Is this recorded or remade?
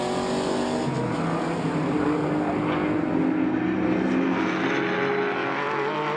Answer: recorded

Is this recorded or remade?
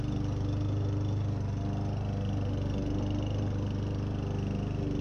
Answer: recorded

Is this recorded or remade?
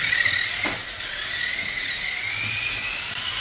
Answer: recorded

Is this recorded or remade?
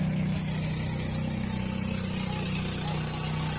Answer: recorded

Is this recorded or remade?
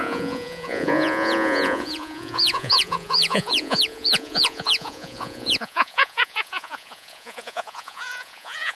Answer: remade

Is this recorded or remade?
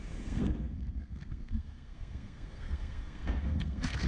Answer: remade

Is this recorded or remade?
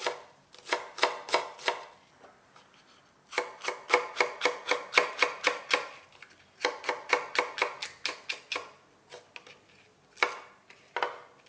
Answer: recorded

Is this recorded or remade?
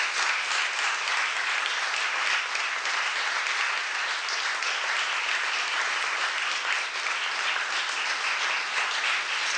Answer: recorded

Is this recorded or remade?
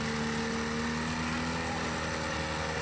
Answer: recorded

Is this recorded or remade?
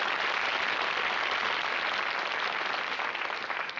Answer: recorded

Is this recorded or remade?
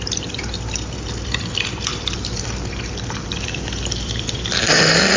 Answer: remade